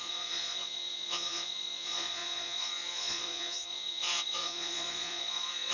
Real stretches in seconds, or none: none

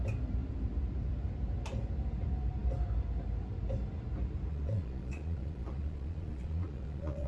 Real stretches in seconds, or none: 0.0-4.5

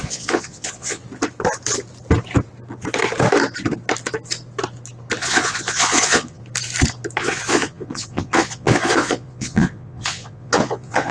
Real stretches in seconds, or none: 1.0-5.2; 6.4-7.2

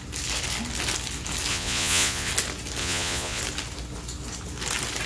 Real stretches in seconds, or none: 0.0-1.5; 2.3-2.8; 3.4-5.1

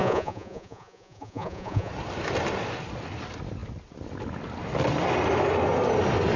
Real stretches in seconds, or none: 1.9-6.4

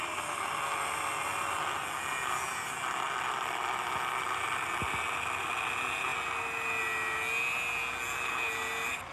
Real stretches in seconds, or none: 0.0-9.1

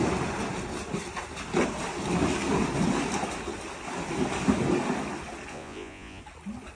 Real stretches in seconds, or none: 0.0-5.5; 6.2-6.8

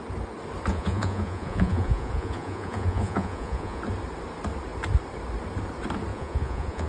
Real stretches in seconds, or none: 0.0-0.7; 3.8-6.1